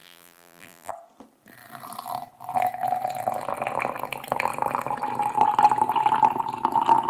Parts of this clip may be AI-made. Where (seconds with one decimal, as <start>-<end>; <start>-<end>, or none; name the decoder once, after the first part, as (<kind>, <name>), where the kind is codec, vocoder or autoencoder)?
0.0-0.9 (vocoder, BigVGAN v2)